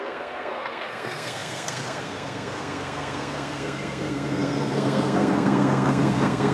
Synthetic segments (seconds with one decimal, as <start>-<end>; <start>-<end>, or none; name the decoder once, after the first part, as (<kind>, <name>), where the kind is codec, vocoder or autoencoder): 0.0-6.5 (codec, SNAC)